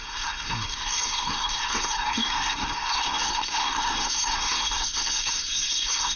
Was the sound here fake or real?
fake